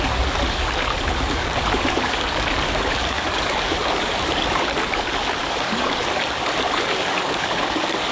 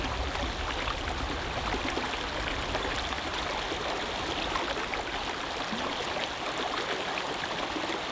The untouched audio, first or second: second